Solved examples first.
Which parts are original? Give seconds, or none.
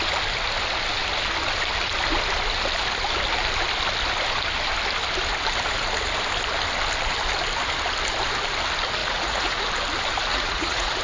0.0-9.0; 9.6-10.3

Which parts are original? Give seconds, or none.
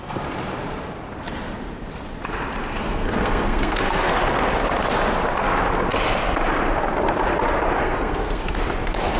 0.0-2.7; 4.1-7.8; 8.6-9.2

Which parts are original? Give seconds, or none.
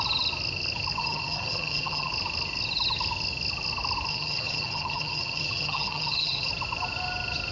0.0-1.0; 2.1-4.1; 6.5-7.5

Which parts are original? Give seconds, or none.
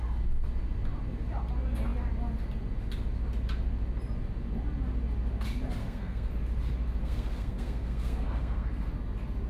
0.0-5.8; 6.3-7.0; 8.9-9.5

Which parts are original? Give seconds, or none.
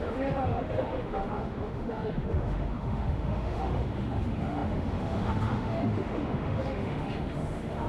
none